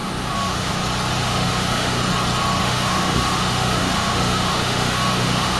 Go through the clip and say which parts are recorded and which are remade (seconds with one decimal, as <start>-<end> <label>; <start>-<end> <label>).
0.0-0.7 remade; 0.7-1.2 recorded; 1.2-2.0 remade; 2.0-2.6 recorded; 2.6-5.6 remade